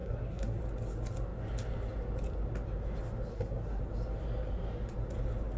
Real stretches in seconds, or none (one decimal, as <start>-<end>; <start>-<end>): 0.6-3.3; 3.8-5.6